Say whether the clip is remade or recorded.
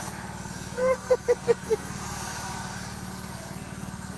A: remade